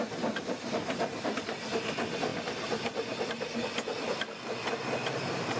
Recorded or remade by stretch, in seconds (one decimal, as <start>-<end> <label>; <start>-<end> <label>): 0.0-5.6 recorded